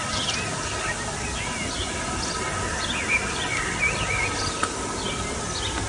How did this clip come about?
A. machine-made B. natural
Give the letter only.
B